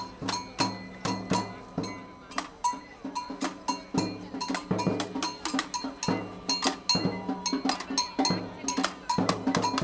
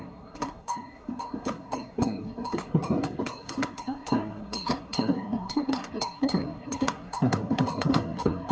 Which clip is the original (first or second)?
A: first